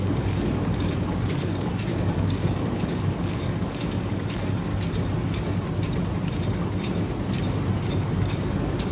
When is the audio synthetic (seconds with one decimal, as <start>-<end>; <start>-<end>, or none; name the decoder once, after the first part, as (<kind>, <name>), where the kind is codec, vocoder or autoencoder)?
0.0-4.7 (codec, DAC); 7.9-8.9